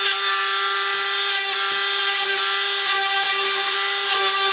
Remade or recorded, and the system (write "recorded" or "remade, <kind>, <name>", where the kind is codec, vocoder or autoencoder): recorded